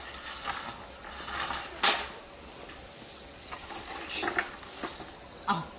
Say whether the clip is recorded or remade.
recorded